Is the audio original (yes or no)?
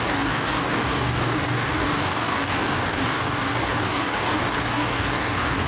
no